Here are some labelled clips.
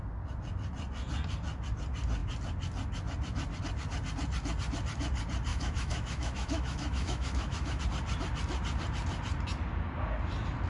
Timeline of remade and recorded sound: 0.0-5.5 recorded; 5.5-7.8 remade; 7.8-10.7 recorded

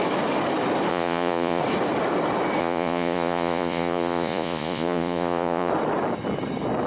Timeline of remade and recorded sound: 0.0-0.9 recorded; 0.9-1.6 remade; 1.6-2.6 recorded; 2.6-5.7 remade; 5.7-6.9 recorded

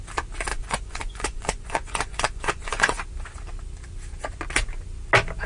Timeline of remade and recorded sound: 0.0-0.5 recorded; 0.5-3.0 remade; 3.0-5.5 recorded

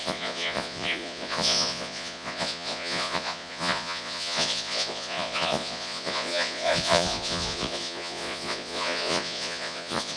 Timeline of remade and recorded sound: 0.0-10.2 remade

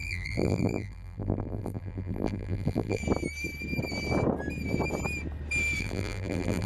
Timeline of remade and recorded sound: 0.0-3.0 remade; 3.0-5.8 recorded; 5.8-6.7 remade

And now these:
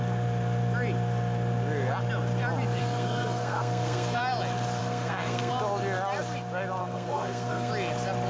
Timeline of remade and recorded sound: 0.0-2.8 recorded; 2.8-4.2 remade; 4.2-4.8 recorded; 4.8-5.5 remade; 5.5-6.8 recorded; 6.8-7.7 remade; 7.7-8.3 recorded

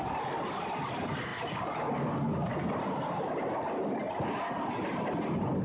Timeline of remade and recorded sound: 0.0-1.3 remade; 1.3-4.1 recorded; 4.1-5.6 remade

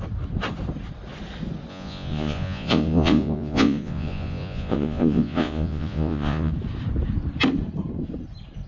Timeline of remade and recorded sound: 0.0-1.7 recorded; 1.7-6.5 remade; 6.5-8.7 recorded